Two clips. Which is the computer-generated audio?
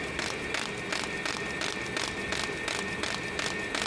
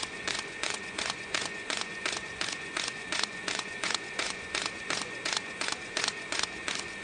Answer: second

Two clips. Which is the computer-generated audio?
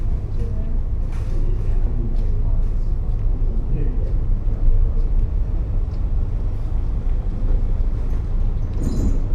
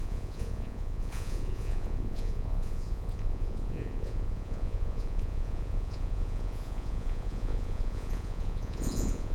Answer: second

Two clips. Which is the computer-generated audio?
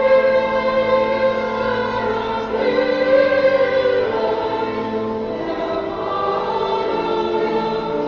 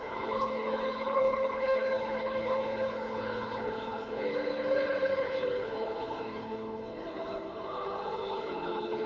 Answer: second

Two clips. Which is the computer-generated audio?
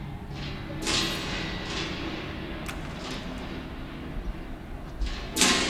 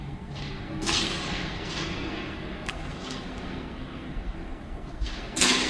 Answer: second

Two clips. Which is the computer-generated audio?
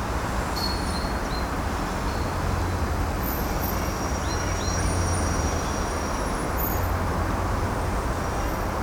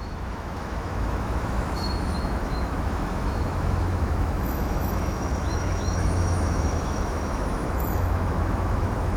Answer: second